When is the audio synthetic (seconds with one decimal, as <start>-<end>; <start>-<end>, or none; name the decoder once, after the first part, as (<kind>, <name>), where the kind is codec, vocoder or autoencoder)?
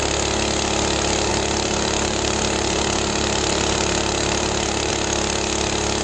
1.3-4.9 (vocoder, BigVGAN v2)